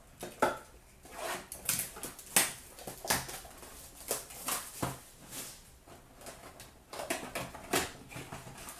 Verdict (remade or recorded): recorded